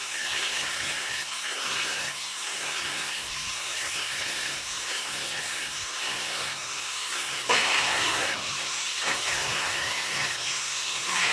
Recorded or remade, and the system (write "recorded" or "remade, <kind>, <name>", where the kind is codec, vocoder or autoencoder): remade, codec, SNAC